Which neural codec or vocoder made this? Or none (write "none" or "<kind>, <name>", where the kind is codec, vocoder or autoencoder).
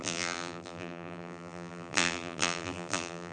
vocoder, BigVGAN v2